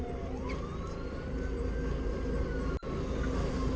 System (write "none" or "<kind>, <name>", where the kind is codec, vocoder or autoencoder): none